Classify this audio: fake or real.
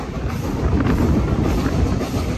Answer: real